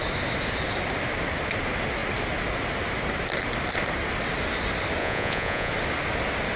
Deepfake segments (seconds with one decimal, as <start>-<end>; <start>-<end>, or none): 5.0-5.7

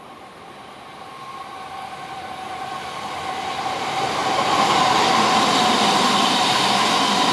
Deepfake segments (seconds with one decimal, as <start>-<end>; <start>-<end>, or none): none

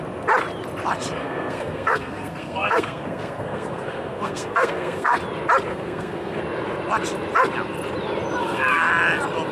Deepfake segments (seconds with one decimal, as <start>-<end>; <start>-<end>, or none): 1.2-5.2; 5.7-6.4; 8.4-8.9

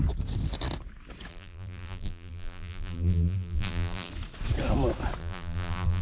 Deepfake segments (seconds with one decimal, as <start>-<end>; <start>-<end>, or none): 1.3-4.1; 5.2-6.0

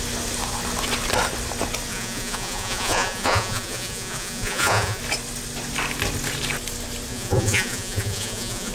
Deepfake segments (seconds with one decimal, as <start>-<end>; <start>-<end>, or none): 1.9-5.0; 7.1-8.7